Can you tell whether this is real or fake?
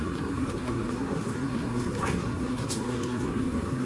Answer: fake